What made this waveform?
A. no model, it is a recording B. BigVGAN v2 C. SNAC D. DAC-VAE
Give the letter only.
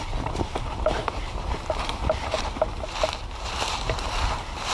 B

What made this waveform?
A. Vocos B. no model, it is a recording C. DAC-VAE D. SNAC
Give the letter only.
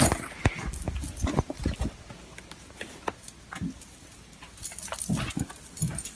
B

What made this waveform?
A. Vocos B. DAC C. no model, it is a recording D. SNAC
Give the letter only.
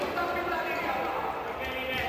C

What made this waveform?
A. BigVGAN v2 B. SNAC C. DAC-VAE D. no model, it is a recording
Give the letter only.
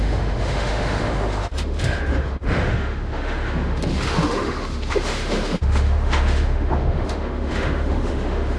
C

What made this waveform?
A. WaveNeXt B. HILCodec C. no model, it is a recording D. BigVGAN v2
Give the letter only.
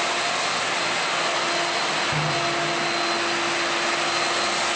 C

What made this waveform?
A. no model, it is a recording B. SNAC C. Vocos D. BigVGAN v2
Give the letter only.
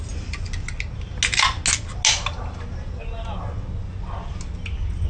A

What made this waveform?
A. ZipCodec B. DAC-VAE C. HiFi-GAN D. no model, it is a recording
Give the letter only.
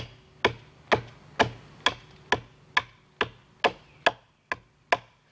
D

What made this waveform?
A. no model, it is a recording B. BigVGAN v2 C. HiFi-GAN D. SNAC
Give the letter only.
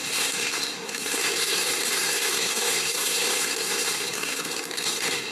D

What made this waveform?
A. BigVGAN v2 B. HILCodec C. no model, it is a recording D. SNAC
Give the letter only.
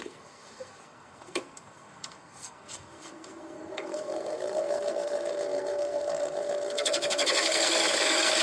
D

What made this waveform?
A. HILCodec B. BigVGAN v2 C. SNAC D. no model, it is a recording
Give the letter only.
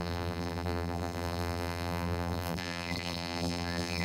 B